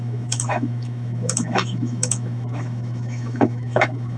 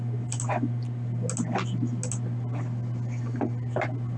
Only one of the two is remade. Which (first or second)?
first